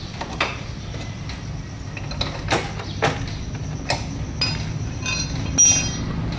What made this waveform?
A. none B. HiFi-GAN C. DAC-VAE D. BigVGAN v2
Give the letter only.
A